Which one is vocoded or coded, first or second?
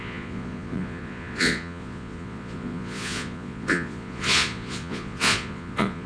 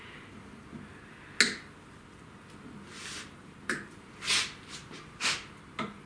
first